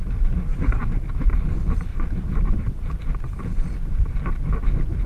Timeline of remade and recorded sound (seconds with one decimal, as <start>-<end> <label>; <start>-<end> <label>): 0.0-1.9 recorded; 1.9-3.0 remade; 3.0-5.1 recorded